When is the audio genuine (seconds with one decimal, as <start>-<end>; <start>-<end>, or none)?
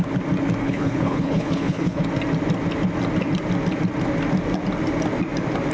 0.0-0.6; 2.0-5.7